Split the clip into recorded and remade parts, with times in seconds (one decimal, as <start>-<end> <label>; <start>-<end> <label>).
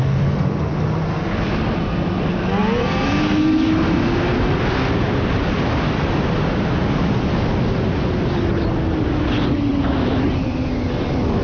0.0-11.4 recorded